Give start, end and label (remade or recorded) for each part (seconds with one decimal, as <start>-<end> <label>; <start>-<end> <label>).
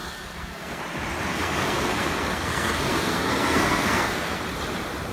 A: 0.0-0.8 remade; 0.8-1.3 recorded; 1.3-4.4 remade; 4.4-5.1 recorded